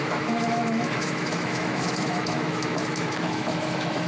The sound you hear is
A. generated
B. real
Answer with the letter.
A